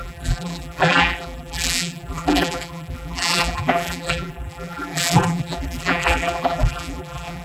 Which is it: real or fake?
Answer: fake